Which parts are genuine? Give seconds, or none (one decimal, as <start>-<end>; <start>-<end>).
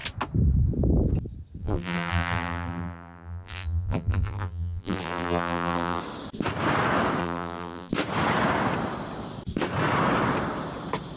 0.0-1.6; 6.0-7.2; 7.9-11.2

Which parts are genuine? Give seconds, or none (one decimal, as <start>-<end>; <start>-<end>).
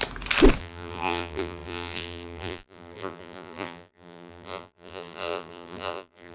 0.0-0.6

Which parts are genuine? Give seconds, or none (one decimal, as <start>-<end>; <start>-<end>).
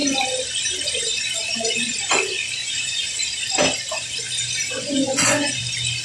0.0-2.6; 3.2-4.8; 5.6-6.0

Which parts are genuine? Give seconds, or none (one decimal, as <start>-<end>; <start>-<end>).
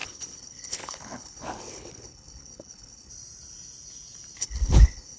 3.1-4.4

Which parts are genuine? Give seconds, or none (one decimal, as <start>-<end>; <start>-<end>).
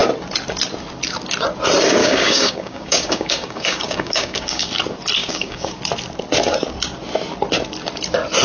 0.0-2.0; 4.7-5.2; 5.8-8.4